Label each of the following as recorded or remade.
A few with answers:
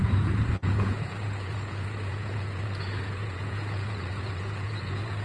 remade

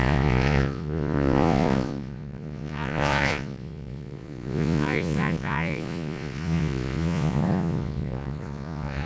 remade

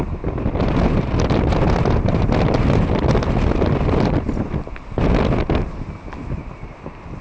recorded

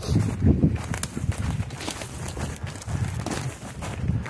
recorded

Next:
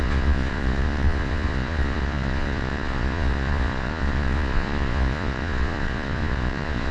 remade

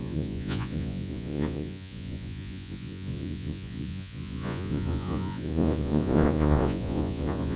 remade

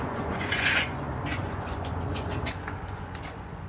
remade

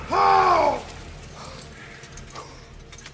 recorded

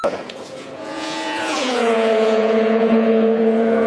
remade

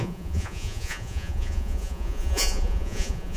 remade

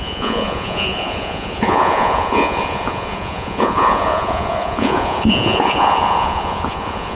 remade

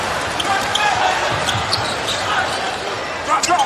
recorded